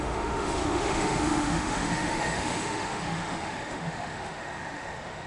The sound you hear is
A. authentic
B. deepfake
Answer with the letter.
B